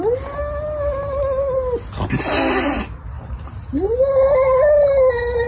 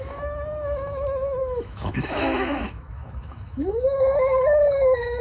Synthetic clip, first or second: second